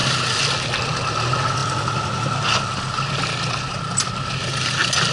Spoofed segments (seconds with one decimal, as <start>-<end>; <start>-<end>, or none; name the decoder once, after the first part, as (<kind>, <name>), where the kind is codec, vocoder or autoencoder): none